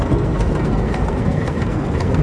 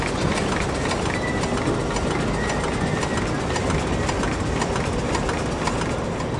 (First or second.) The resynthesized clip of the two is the first